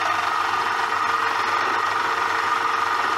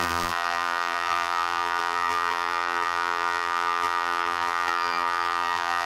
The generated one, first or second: second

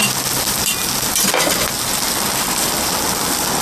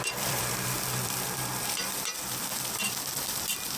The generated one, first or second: second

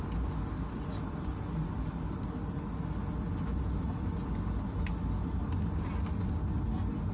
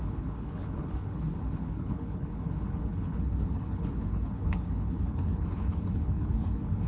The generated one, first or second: second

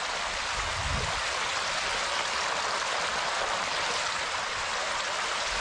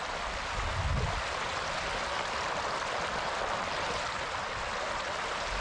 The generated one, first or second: first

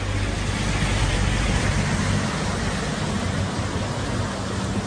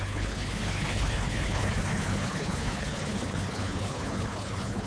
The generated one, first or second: second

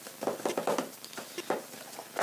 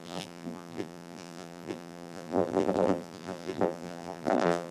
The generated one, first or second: second